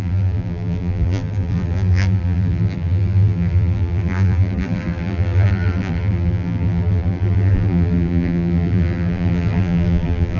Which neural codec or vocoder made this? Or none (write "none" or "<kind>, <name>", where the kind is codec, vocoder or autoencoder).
vocoder, BigVGAN v2